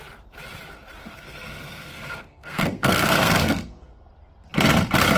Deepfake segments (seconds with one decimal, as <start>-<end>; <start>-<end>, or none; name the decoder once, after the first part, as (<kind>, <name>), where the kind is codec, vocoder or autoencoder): 1.0-4.1 (codec, SNAC)